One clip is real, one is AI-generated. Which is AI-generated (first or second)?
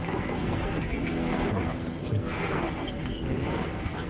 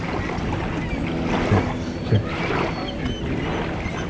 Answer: first